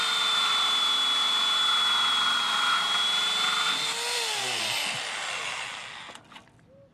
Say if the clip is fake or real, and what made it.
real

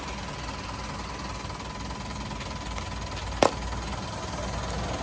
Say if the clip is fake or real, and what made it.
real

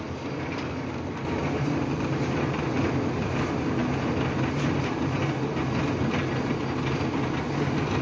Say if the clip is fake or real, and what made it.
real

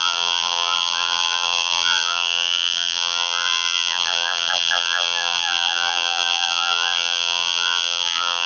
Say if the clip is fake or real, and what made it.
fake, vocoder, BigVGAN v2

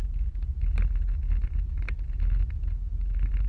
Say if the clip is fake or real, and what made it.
real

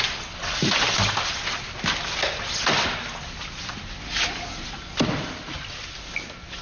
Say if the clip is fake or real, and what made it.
real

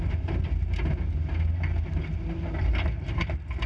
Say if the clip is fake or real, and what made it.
real